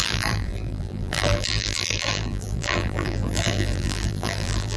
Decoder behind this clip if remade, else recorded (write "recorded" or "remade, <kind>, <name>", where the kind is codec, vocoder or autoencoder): remade, vocoder, BigVGAN v2